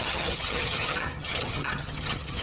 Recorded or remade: remade